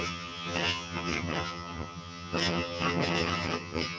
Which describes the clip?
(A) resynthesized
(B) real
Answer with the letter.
A